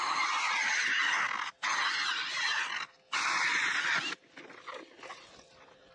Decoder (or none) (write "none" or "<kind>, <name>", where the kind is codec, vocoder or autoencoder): none